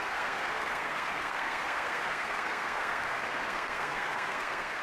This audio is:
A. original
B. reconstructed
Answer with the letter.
B